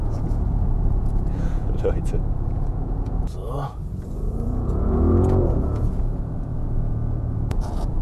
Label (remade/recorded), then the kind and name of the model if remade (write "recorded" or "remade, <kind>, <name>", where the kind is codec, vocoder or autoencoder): remade, vocoder, Vocos